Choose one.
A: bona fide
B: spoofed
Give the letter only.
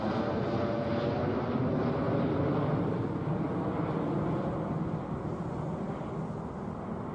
A